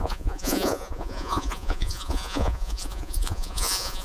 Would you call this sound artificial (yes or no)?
yes